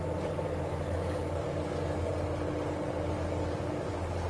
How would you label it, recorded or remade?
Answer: recorded